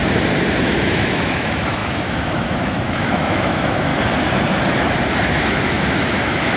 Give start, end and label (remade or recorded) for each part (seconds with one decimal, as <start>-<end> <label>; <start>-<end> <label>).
0.0-0.6 recorded; 0.6-3.9 remade; 3.9-5.2 recorded; 5.2-6.6 remade